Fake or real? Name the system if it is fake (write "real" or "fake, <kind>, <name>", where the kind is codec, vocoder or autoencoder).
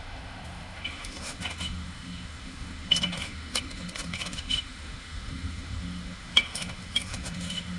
fake, autoencoder, DAC-VAE